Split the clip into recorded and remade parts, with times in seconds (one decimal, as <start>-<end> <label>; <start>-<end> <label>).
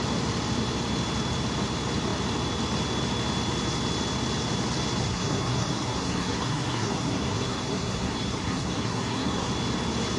0.0-5.0 recorded; 5.0-9.5 remade; 9.5-10.2 recorded